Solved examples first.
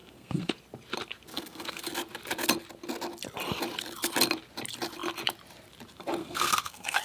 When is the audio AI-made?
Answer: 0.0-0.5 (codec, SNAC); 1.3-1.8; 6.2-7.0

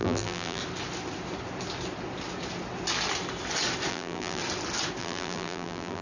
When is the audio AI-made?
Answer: 0.0-0.6 (vocoder, BigVGAN v2); 3.9-4.4; 5.0-6.0

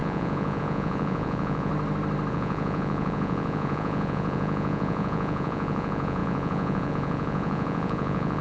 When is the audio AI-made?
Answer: 0.0-1.7 (vocoder, Vocos); 2.3-8.4

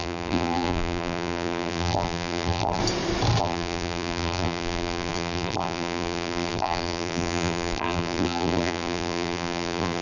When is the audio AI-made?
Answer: 0.0-2.8 (vocoder, BigVGAN v2); 3.4-10.0

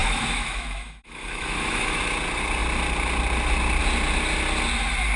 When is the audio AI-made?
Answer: 0.0-2.0 (autoencoder, DAC-VAE)

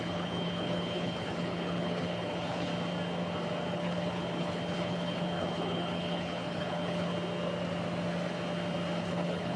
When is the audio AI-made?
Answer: 0.0-2.7 (codec, HILCodec); 3.7-7.1; 9.0-9.6